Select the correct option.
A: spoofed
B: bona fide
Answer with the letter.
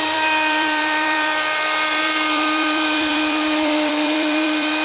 A